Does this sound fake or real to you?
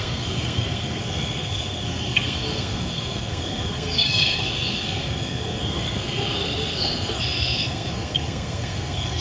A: fake